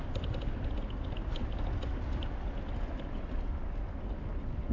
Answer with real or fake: real